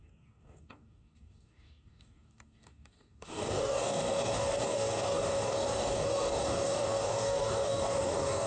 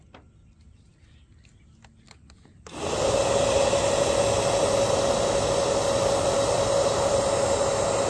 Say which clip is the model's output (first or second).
first